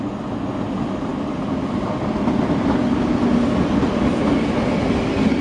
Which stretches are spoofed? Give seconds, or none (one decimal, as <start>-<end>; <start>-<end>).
none